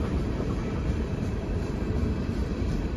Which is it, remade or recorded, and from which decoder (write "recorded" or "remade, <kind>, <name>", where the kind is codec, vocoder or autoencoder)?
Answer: remade, vocoder, BigVGAN v2